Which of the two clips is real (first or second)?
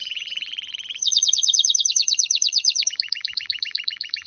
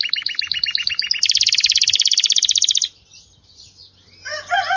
second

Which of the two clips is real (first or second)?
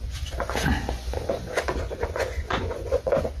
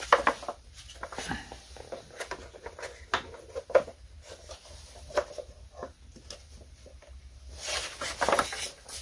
second